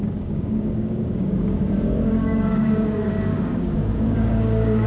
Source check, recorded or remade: remade